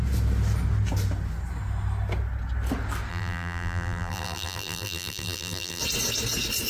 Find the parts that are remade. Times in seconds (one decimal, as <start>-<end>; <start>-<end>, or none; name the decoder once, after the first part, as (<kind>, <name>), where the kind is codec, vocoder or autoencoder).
3.1-5.8 (vocoder, BigVGAN v2)